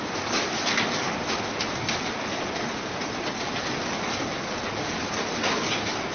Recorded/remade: recorded